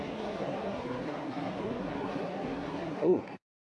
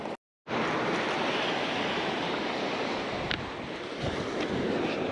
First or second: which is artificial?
first